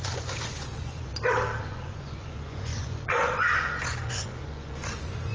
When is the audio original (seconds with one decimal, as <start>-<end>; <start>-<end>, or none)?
1.1-1.6